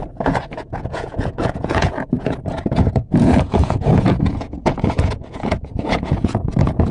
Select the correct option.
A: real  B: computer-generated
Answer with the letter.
B